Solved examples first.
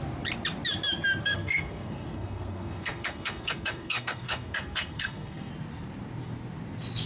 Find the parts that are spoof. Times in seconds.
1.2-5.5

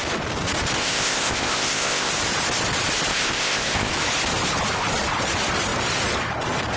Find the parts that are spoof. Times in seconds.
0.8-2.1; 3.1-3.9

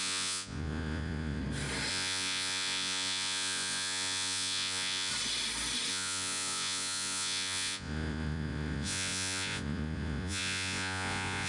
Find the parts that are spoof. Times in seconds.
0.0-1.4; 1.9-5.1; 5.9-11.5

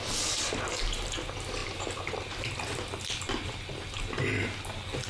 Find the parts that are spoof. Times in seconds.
none

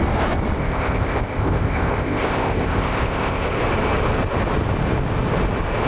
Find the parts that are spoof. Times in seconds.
0.6-3.6

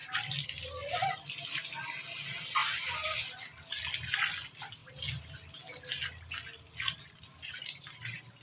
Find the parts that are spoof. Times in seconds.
none